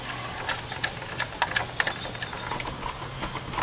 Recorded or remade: recorded